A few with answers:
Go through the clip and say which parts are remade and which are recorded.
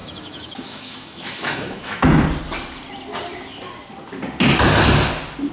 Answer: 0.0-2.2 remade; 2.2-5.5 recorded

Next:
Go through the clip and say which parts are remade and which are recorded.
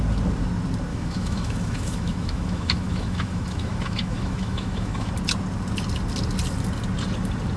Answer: 0.0-0.9 recorded; 0.9-5.1 remade; 5.1-7.6 recorded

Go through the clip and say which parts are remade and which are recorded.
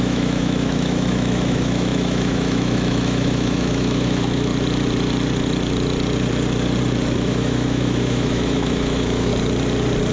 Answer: 0.0-4.5 remade; 4.5-7.2 recorded; 7.2-9.3 remade; 9.3-10.1 recorded